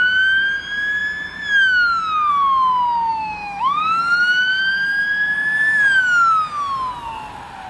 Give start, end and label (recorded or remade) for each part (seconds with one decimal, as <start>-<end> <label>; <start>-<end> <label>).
0.0-3.1 recorded; 3.1-4.6 remade; 4.6-7.7 recorded